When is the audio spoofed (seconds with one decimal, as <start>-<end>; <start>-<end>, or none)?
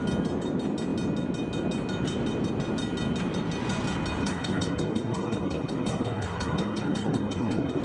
4.2-7.8